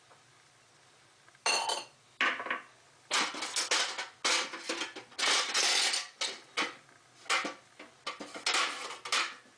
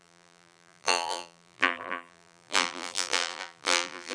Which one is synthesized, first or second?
second